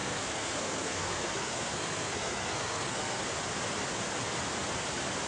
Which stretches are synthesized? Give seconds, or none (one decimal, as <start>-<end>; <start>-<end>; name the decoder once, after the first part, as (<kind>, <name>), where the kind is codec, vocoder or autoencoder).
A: 0.0-3.2 (codec, SNAC)